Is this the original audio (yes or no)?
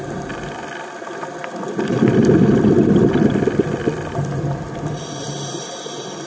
yes